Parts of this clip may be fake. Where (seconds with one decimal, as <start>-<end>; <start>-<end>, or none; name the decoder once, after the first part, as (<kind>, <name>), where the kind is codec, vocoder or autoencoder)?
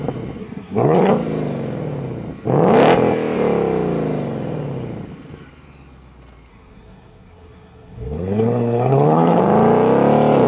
0.4-1.1 (codec, SNAC); 6.5-9.4